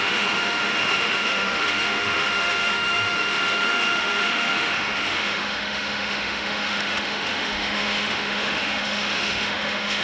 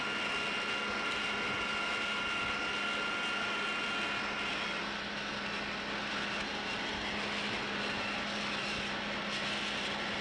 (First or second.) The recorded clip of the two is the second